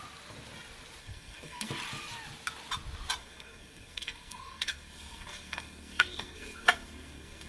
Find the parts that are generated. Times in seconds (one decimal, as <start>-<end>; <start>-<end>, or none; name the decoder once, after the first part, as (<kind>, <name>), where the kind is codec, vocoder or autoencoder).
1.0-1.7 (codec, SNAC); 3.2-7.5